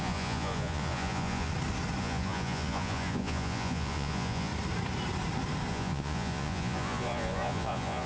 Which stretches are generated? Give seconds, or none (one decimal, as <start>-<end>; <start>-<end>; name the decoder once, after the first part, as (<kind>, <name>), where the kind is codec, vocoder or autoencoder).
0.0-1.5 (vocoder, Vocos); 2.0-4.5; 5.7-8.1